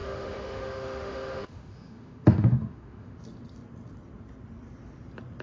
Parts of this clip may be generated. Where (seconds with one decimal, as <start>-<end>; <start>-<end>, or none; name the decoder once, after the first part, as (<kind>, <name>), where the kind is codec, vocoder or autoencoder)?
0.0-3.2 (autoencoder, DAC-VAE)